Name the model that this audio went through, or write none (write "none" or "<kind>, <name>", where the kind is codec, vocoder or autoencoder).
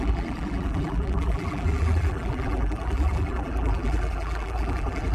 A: vocoder, BigVGAN v2